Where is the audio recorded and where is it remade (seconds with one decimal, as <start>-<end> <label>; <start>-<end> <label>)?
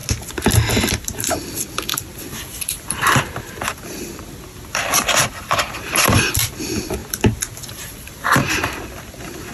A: 0.0-0.7 recorded; 0.7-7.0 remade; 7.0-7.7 recorded; 7.7-9.5 remade